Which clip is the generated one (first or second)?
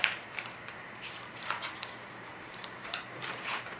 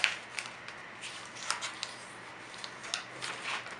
first